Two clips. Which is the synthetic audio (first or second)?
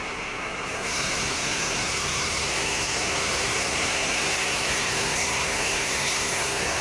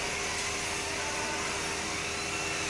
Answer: first